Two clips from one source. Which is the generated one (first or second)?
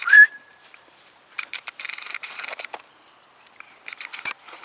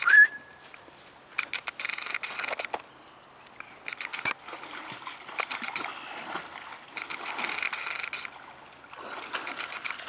first